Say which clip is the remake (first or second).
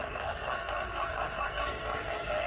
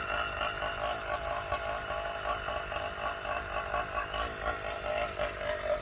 first